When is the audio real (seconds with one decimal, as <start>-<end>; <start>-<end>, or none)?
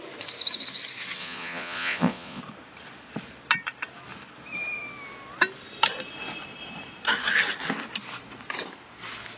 0.0-1.2; 2.4-9.4